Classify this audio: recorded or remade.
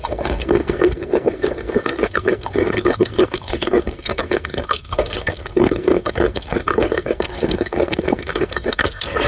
remade